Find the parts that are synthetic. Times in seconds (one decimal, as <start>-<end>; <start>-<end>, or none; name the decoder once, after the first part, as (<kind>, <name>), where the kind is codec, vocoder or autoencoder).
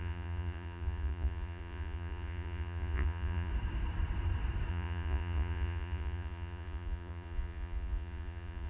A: 0.0-3.5 (vocoder, Vocos); 4.7-8.7